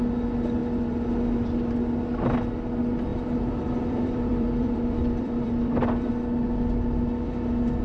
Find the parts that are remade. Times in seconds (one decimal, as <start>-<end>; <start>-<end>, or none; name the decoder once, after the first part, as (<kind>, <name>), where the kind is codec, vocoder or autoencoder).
3.1-6.1 (vocoder, BigVGAN v2)